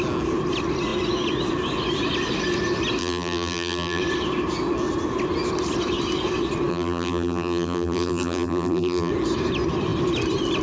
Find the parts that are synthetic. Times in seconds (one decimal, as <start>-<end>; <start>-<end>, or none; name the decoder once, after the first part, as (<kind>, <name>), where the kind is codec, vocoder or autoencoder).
3.0-4.0 (vocoder, BigVGAN v2); 6.7-9.1